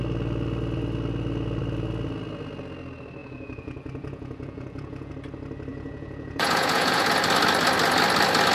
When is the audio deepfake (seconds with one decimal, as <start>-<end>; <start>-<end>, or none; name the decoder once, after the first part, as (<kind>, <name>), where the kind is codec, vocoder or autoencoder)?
3.2-5.1 (vocoder, Vocos); 5.7-7.1

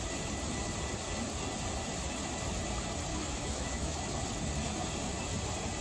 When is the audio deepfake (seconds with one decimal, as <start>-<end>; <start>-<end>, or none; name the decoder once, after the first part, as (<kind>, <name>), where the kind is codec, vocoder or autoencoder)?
3.1-4.0 (autoencoder, DAC-VAE)

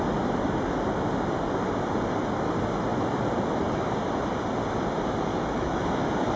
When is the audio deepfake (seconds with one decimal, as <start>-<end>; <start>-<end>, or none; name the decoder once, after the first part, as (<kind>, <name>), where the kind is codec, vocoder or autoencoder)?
5.3-5.8 (autoencoder, DAC-VAE)

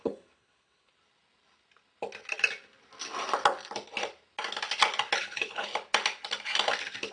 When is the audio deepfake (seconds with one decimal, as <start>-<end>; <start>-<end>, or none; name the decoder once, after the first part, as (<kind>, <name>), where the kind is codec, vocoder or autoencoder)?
0.0-0.9 (codec, HILCodec); 5.2-5.7

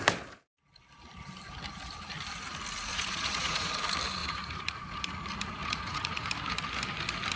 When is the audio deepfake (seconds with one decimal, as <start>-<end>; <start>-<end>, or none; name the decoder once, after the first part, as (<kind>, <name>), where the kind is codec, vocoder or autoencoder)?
2.9-3.7 (vocoder, Vocos); 4.2-5.0; 5.6-6.3

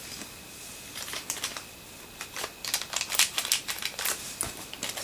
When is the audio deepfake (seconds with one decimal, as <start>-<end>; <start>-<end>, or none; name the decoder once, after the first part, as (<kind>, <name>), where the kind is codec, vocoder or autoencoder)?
none

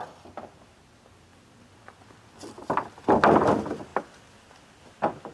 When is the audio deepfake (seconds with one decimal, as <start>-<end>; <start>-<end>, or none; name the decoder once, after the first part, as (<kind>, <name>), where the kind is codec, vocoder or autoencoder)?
none

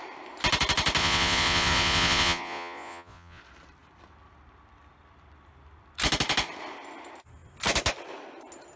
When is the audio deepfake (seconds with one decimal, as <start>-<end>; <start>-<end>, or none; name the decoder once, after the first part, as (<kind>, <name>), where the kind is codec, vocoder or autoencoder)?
1.0-3.4 (vocoder, Vocos)